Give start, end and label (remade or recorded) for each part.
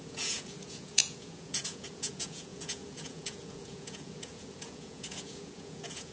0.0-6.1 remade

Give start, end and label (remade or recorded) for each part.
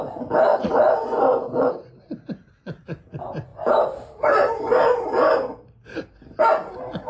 0.0-0.5 recorded; 0.5-1.7 remade; 1.7-7.1 recorded